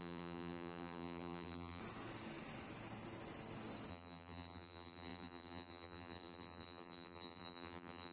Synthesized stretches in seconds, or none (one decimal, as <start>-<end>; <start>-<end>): 0.0-1.8; 3.9-8.1

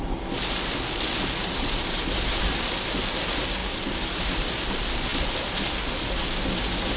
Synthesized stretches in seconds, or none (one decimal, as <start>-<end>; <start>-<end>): 1.4-2.4; 3.6-4.6; 5.1-5.6

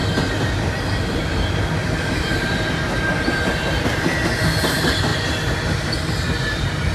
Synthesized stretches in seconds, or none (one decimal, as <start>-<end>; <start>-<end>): 0.6-2.3; 3.3-5.1; 6.5-6.9

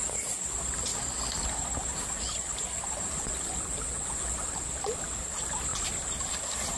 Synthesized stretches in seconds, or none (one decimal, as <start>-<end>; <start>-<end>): 5.7-6.3

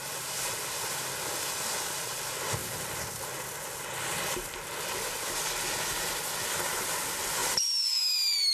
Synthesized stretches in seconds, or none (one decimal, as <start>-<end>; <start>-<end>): 0.0-2.6; 5.7-8.5

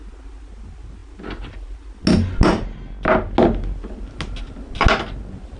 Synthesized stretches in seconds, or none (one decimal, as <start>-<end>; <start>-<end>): none